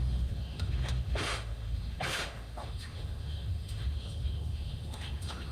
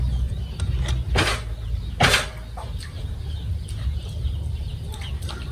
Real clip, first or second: second